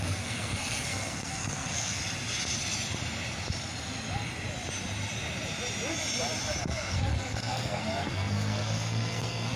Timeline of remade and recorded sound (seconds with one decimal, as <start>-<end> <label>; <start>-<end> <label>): 0.0-2.0 remade; 2.0-6.6 recorded; 6.6-9.6 remade